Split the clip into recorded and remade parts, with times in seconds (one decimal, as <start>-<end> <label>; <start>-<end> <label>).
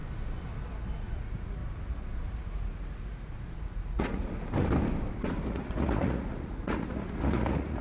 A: 0.0-1.0 recorded; 1.0-1.6 remade; 1.6-2.3 recorded; 2.3-4.4 remade; 4.4-5.1 recorded; 5.1-7.8 remade